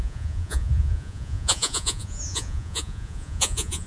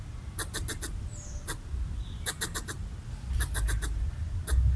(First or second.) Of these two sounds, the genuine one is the second